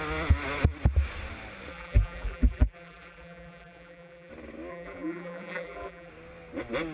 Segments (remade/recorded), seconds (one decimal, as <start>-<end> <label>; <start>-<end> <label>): 0.0-1.7 recorded; 1.7-4.3 remade; 4.3-4.7 recorded; 4.7-6.1 remade; 6.1-6.9 recorded